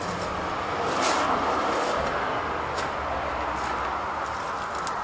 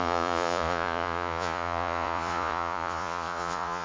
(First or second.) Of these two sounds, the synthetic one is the second